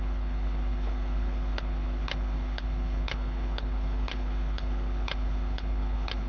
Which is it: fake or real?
fake